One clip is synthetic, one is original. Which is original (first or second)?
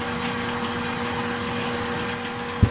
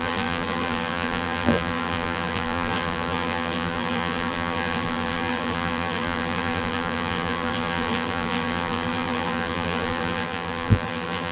first